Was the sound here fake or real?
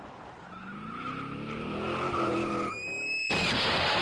real